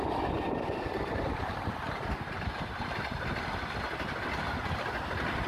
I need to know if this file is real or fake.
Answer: real